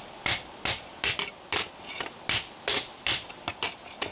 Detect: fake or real real